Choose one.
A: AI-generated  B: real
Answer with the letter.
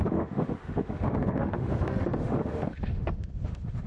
A